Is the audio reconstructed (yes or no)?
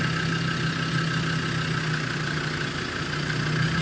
no